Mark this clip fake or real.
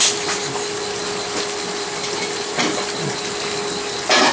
real